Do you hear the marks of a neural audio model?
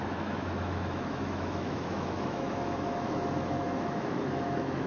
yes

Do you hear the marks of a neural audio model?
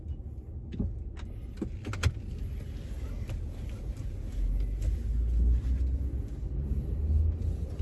no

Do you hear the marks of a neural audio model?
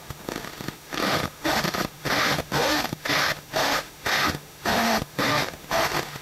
yes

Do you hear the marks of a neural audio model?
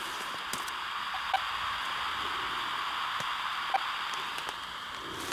no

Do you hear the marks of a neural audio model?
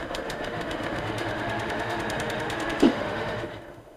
yes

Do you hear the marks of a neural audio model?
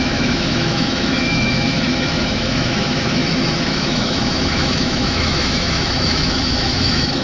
yes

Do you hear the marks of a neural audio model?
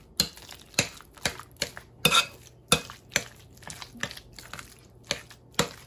no